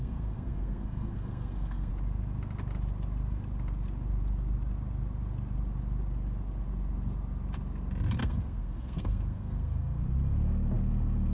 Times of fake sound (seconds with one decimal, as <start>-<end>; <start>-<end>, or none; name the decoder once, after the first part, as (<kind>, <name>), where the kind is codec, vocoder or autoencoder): 0.0-1.9 (codec, SNAC); 8.2-10.0